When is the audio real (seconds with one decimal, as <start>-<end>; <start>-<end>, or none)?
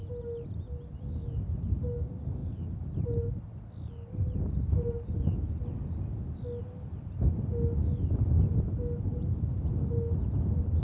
0.0-10.8